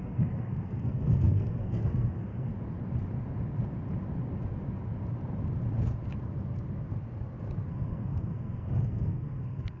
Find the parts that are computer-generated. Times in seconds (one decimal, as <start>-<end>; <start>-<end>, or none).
0.0-2.5; 7.7-9.8